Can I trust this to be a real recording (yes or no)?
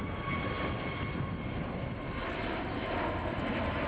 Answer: yes